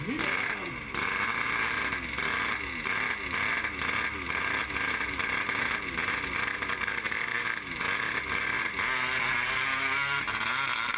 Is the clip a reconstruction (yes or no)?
no